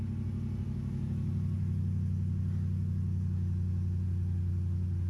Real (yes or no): yes